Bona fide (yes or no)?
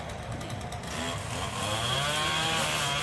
yes